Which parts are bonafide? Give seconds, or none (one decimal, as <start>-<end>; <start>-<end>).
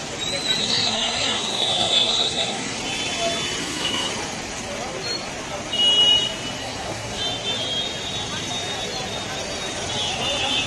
0.0-0.6; 2.8-3.6; 4.1-6.6; 7.2-10.7